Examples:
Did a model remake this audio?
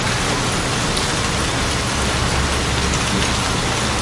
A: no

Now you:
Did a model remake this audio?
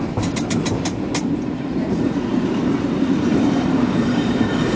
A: yes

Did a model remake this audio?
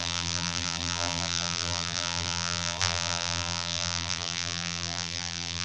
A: yes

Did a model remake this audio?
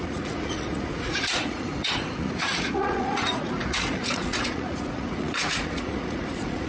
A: yes